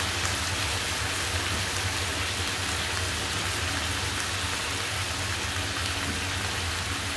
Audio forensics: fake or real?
real